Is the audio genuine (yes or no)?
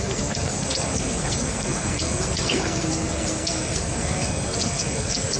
no